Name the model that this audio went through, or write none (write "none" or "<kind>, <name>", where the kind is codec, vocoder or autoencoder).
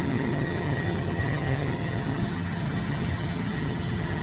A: vocoder, HiFi-GAN